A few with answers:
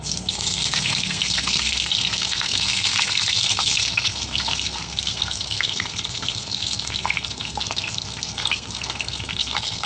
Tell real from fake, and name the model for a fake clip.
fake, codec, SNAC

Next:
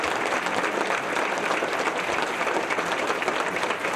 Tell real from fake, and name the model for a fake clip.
real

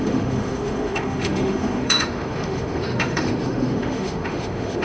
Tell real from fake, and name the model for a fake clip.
fake, autoencoder, DAC-VAE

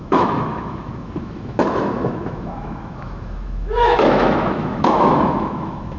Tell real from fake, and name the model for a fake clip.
fake, autoencoder, DAC-VAE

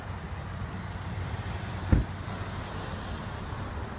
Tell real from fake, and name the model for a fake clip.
real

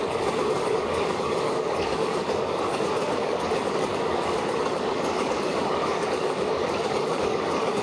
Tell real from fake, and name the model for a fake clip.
fake, codec, DAC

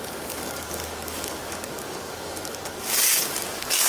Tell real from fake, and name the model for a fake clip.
fake, codec, DAC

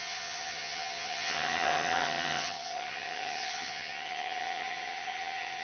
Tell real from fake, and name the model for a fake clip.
fake, vocoder, HiFi-GAN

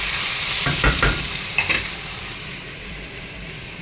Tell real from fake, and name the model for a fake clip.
fake, vocoder, BigVGAN v2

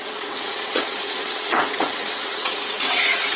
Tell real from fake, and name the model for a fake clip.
fake, vocoder, WaveNeXt